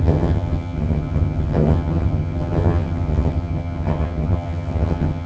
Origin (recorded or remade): remade